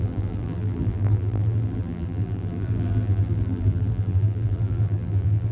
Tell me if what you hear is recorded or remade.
remade